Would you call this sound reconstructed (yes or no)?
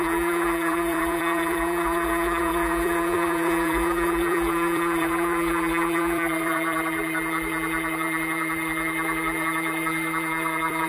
yes